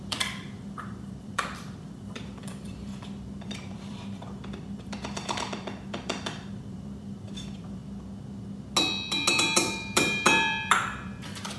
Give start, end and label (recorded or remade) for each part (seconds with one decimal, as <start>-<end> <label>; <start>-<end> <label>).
0.0-2.9 remade; 2.9-3.5 recorded; 3.5-7.8 remade; 7.8-9.3 recorded; 9.3-11.6 remade